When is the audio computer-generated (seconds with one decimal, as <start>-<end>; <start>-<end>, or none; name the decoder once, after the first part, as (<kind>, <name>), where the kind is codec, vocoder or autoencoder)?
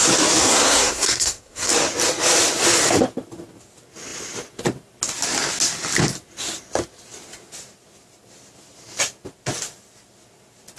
0.4-1.7 (codec, SNAC)